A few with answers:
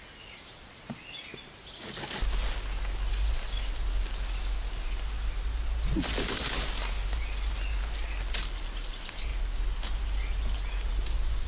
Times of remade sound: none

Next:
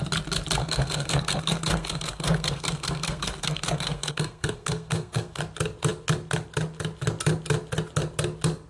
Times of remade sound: 0.6-5.4 (codec, SNAC)

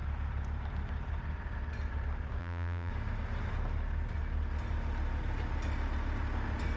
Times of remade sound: 2.4-2.9 (vocoder, BigVGAN v2)

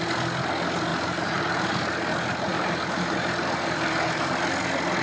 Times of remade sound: 0.9-1.7 (vocoder, BigVGAN v2); 2.5-4.3

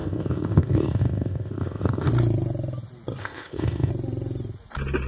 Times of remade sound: 0.0-2.1 (codec, ZipCodec); 3.2-3.9

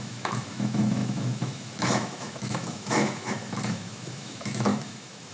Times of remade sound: 0.0-5.3 (autoencoder, DAC-VAE)

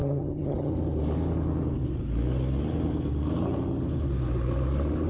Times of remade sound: 0.0-0.7 (vocoder, HiFi-GAN)

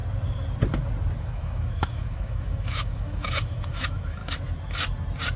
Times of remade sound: 1.2-4.2 (autoencoder, DAC-VAE)